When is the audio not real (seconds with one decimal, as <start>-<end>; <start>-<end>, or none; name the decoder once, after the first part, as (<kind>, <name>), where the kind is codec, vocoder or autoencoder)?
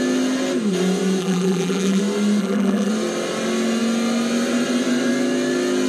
1.2-2.0 (vocoder, BigVGAN v2); 2.4-2.9